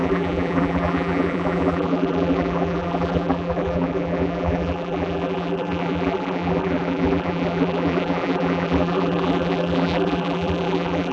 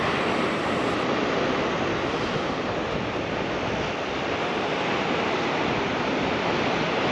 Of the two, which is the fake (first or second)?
first